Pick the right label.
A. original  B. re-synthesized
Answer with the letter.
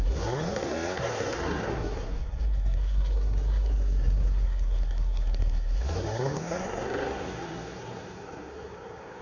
B